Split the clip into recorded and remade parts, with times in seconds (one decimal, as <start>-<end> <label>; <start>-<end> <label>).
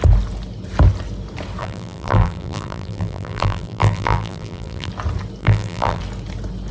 0.0-1.6 recorded; 1.6-4.9 remade; 4.9-5.4 recorded; 5.4-6.0 remade; 6.0-6.7 recorded